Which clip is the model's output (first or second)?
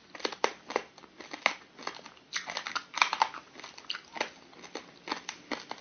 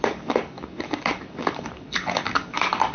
second